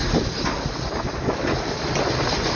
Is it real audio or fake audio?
real